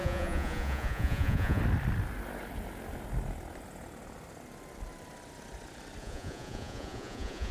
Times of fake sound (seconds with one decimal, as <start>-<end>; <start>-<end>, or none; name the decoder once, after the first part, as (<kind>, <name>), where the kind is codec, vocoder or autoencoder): 0.0-1.6 (vocoder, Vocos); 6.0-7.5